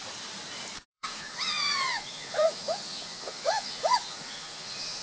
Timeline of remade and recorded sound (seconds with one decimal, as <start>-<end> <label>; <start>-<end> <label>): 0.0-0.9 recorded; 0.9-5.0 remade